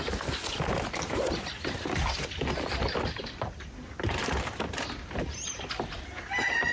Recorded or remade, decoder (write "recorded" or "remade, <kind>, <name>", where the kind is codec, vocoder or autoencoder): recorded